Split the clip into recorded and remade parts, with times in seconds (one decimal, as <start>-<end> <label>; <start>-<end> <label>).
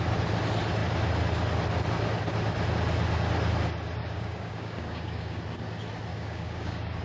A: 0.0-4.0 recorded; 4.0-5.4 remade; 5.4-6.1 recorded; 6.1-7.0 remade